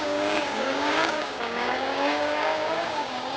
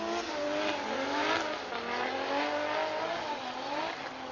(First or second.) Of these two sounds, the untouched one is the second